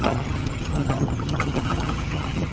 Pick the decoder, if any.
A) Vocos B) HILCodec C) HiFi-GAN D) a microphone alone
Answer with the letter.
C